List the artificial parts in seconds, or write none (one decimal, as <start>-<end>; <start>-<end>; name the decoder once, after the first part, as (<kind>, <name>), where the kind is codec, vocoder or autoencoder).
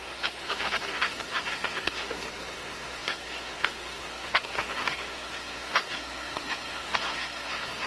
0.0-7.9 (codec, SNAC)